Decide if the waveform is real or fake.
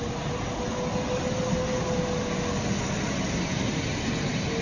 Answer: real